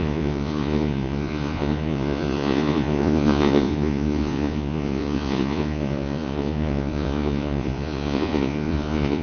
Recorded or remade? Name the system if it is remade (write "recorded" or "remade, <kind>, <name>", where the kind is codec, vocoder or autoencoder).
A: remade, vocoder, Vocos